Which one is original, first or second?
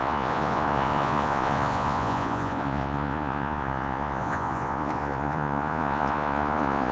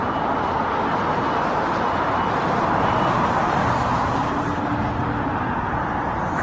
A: second